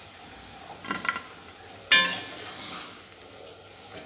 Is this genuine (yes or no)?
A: yes